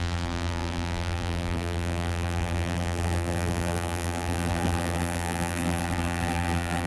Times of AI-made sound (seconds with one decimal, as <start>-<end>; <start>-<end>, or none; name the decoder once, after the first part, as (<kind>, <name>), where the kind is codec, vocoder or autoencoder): 0.0-6.9 (vocoder, BigVGAN v2)